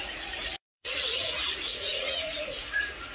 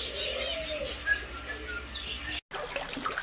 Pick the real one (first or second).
second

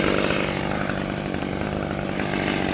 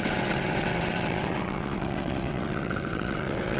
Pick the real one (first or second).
first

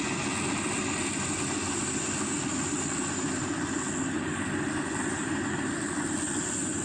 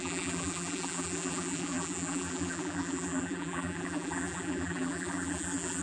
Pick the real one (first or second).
first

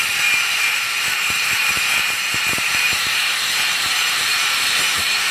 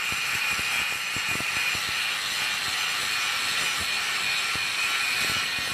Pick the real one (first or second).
second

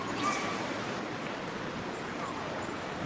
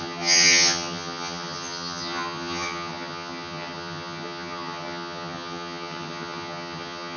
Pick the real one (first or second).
first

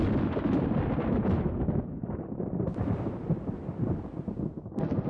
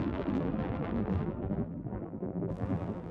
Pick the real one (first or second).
first